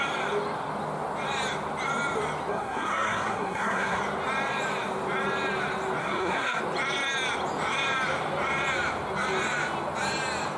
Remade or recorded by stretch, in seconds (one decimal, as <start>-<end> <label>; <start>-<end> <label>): 0.0-2.5 recorded; 2.5-4.0 remade; 4.0-6.0 recorded; 6.0-6.6 remade; 6.6-10.6 recorded